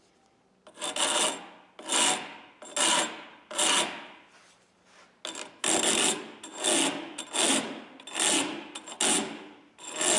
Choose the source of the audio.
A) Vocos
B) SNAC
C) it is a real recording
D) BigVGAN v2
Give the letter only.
C